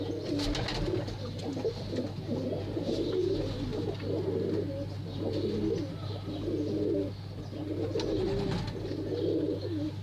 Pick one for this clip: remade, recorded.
recorded